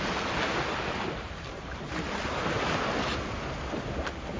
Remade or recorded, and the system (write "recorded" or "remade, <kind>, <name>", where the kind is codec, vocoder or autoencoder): recorded